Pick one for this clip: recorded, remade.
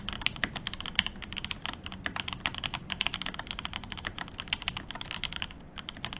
recorded